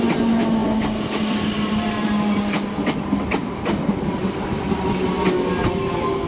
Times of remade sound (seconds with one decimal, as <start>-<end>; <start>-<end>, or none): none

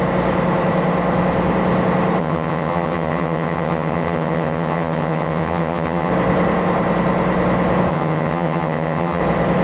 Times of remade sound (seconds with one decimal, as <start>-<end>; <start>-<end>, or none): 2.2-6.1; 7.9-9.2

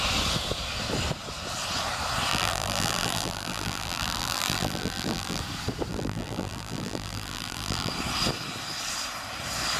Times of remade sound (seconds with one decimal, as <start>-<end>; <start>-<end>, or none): 2.3-5.4; 5.9-7.9